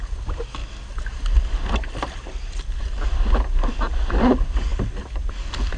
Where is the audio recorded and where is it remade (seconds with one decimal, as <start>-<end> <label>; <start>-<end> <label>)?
0.0-5.8 recorded